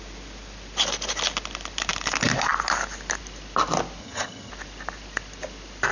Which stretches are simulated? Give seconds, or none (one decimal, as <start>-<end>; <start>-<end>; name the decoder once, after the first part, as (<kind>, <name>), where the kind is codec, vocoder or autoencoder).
4.0-4.5 (vocoder, HiFi-GAN)